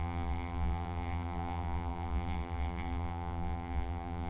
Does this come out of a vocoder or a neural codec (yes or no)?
yes